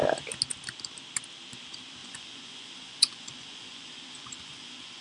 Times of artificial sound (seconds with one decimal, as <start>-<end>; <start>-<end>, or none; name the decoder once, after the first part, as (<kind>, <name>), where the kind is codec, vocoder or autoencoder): 2.0-5.0 (vocoder, Vocos)